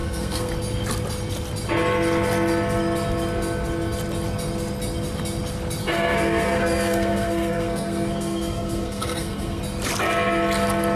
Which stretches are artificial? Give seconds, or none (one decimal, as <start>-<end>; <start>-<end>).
0.0-0.5; 5.8-9.6